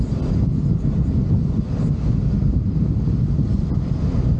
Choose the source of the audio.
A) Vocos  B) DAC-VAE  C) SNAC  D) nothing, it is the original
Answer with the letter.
D